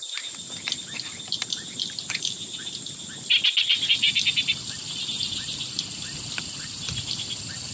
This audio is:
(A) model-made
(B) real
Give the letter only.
B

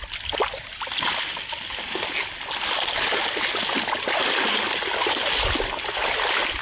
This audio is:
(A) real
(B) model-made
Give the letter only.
A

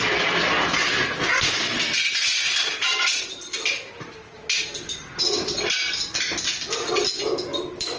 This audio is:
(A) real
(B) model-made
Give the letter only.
A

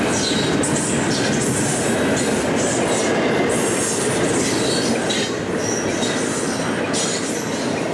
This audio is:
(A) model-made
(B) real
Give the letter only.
B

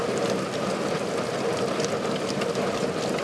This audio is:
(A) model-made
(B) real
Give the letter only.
B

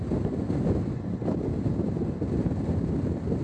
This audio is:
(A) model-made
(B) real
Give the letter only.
B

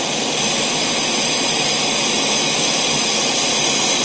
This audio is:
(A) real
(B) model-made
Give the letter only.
A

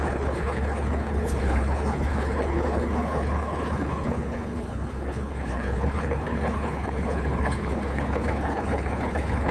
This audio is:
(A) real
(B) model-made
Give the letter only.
B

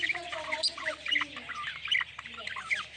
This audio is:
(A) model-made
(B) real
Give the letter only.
B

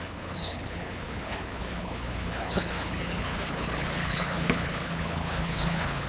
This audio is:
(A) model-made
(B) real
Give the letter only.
A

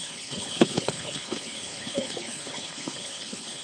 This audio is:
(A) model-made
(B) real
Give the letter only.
A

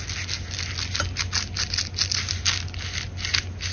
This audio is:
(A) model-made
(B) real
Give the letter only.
B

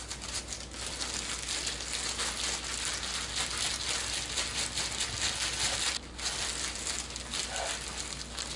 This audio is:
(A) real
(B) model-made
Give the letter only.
A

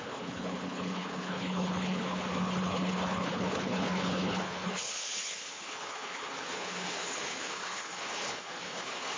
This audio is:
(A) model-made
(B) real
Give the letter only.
A